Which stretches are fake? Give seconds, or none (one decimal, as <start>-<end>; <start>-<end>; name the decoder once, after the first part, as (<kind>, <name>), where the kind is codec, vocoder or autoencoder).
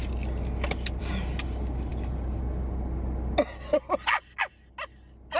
none